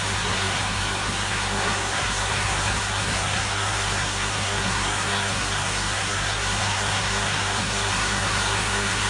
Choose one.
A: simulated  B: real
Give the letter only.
A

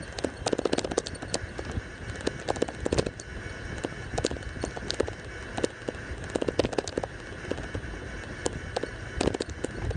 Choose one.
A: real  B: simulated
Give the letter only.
A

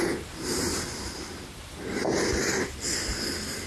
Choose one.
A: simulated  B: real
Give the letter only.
B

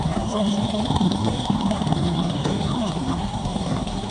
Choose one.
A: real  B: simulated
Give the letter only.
B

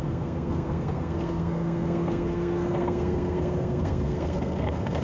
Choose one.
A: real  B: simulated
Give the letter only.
B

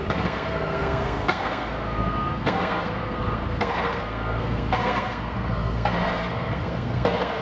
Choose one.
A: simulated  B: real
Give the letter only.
A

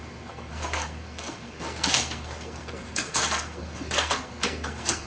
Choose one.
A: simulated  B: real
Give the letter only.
A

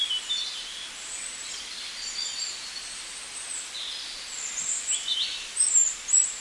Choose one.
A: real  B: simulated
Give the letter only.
A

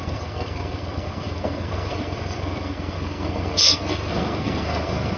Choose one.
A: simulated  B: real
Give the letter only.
A